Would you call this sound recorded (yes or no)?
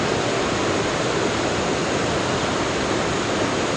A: yes